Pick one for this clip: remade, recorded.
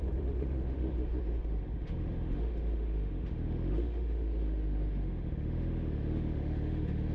remade